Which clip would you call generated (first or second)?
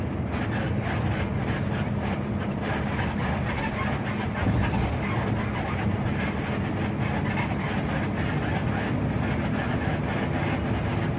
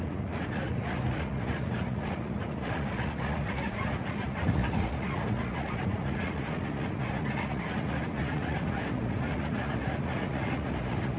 second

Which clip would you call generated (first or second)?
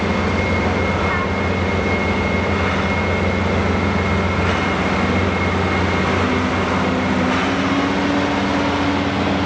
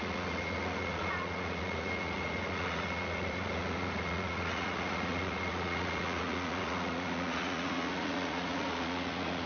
second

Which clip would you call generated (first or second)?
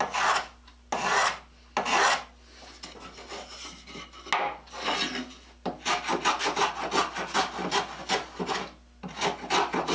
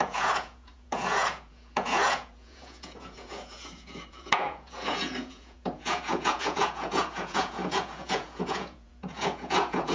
second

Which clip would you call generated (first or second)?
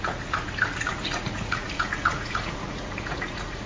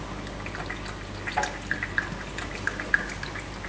first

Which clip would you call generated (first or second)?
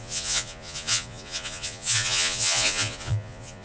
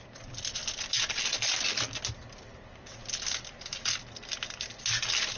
first